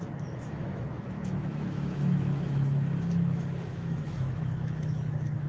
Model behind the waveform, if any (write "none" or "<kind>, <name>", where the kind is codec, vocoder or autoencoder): autoencoder, DAC-VAE